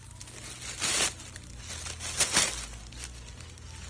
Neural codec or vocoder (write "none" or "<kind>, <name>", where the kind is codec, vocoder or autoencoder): none